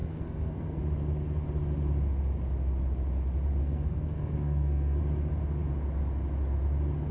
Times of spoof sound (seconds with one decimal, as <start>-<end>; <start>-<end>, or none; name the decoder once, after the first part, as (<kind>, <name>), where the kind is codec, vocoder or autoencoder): 0.0-0.8 (codec, SNAC); 3.6-5.0